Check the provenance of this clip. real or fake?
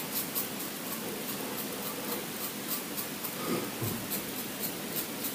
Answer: real